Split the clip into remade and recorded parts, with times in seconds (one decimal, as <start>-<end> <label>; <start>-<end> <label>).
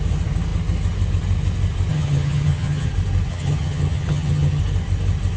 0.0-1.9 recorded; 1.9-2.9 remade; 2.9-3.3 recorded; 3.3-4.6 remade; 4.6-5.4 recorded